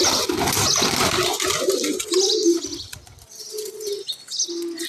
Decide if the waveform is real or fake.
real